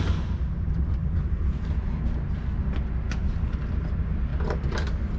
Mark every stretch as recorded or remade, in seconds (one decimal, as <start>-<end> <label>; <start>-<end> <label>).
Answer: 0.0-5.2 recorded

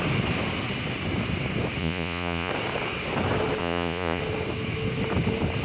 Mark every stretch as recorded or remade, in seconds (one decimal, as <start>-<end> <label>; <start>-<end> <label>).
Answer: 0.0-1.8 recorded; 1.8-2.5 remade; 2.5-3.6 recorded; 3.6-4.2 remade; 4.2-5.6 recorded

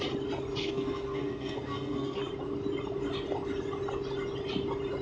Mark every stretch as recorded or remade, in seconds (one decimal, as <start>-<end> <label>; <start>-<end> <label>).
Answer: 0.0-0.6 recorded; 0.6-2.2 remade; 2.2-5.0 recorded

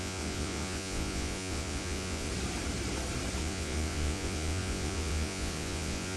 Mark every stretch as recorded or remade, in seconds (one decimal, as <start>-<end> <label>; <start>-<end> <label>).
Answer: 0.0-2.3 remade; 2.3-3.4 recorded; 3.4-6.2 remade